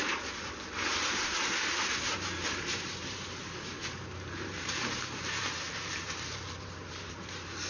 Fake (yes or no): yes